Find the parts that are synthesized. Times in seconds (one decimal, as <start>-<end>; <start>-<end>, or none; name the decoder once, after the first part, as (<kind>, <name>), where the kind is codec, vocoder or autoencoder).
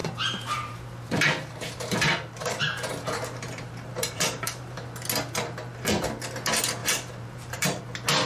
0.0-4.9 (vocoder, BigVGAN v2); 6.8-7.8